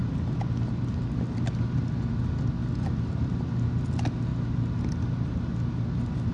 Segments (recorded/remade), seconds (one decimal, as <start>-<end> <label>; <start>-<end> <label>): 0.0-6.3 recorded